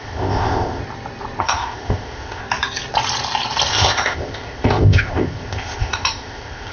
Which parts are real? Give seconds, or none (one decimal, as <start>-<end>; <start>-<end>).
0.8-1.4; 2.4-3.7